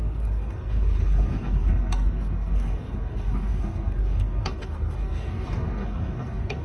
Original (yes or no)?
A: no